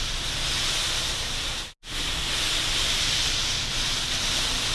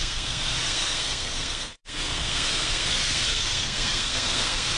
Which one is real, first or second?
first